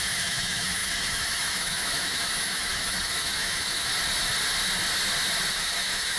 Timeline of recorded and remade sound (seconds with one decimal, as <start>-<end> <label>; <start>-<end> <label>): 0.0-3.9 remade; 3.9-5.5 recorded; 5.5-6.2 remade